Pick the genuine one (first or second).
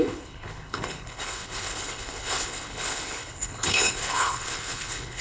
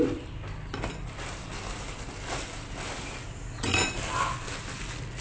second